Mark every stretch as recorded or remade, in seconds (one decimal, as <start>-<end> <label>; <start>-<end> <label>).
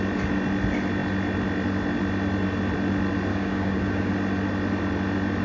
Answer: 0.0-3.3 recorded; 3.3-4.1 remade; 4.1-5.4 recorded